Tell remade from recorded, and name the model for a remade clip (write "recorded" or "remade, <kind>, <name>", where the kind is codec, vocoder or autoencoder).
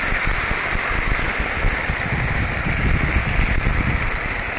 recorded